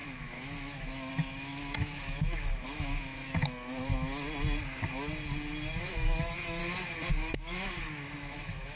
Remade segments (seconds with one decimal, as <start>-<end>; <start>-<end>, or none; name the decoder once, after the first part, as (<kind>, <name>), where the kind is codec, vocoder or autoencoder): 0.0-3.9 (autoencoder, DAC-VAE); 5.8-6.6; 7.1-8.8